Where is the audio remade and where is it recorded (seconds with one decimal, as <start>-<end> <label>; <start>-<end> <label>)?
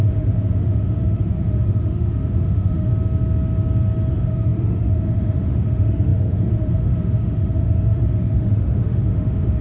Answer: 0.0-2.9 remade; 2.9-4.1 recorded; 4.1-9.6 remade